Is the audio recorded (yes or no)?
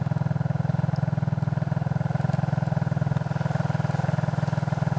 yes